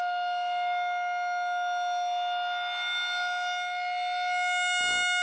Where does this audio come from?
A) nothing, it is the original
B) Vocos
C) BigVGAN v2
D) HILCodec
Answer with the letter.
A